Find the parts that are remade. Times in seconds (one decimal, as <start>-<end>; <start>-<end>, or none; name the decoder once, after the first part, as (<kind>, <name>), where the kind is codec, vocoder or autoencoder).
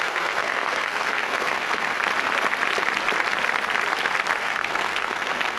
0.0-2.0 (codec, SNAC); 4.4-5.6